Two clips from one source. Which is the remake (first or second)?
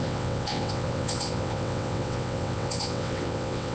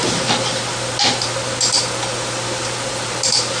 first